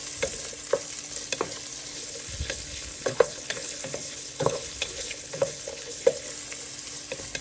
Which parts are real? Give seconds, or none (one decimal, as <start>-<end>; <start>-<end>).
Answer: 0.0-1.9; 6.3-7.4